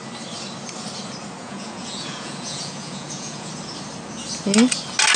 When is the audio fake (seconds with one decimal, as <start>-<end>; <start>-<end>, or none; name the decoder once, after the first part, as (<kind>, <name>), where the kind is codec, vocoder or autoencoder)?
1.4-3.5 (vocoder, Vocos)